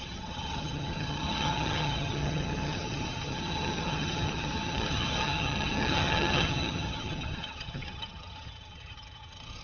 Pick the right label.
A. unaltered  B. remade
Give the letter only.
B